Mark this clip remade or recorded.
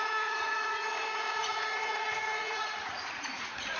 remade